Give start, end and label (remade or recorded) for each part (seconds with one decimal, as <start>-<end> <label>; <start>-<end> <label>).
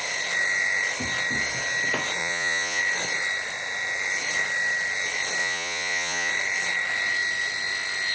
0.0-2.2 recorded; 2.2-2.8 remade; 2.8-5.4 recorded; 5.4-6.3 remade; 6.3-8.1 recorded